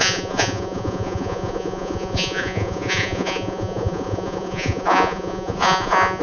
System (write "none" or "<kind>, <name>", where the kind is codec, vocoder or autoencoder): vocoder, Vocos